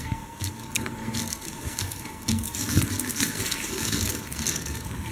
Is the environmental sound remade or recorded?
remade